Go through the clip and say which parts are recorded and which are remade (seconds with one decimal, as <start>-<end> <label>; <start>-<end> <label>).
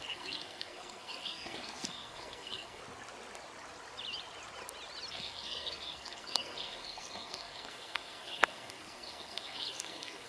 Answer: 0.0-2.8 remade; 2.8-5.1 recorded; 5.1-10.3 remade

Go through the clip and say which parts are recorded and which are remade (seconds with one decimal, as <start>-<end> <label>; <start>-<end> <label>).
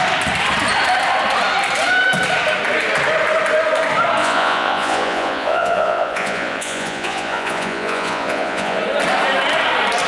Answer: 0.0-4.2 recorded; 4.2-8.8 remade; 8.8-10.1 recorded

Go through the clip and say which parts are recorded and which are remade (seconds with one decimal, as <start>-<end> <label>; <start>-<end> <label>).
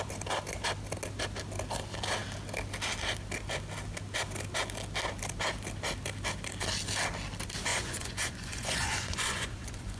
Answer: 0.0-7.7 recorded; 7.7-10.0 remade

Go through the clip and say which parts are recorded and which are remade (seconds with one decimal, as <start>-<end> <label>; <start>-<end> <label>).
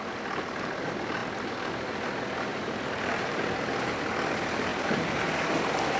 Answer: 0.0-2.5 recorded; 2.5-3.8 remade; 3.8-4.7 recorded; 4.7-6.0 remade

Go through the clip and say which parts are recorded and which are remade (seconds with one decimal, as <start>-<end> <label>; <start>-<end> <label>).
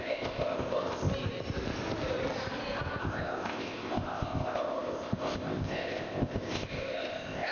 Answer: 0.0-1.1 remade; 1.1-3.0 recorded; 3.0-7.5 remade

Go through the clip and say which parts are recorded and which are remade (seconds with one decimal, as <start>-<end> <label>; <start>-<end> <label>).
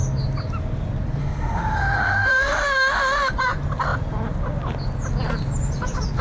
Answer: 0.0-1.2 recorded; 1.2-3.3 remade; 3.3-6.2 recorded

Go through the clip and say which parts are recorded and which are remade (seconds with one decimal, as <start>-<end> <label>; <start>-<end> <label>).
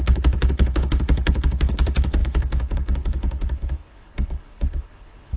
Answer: 0.0-5.4 remade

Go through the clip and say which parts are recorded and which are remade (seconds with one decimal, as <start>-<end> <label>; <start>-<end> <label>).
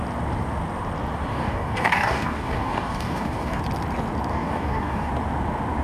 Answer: 0.0-1.3 recorded; 1.3-3.6 remade; 3.6-4.3 recorded; 4.3-5.1 remade; 5.1-5.8 recorded